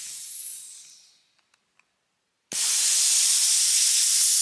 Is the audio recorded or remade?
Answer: recorded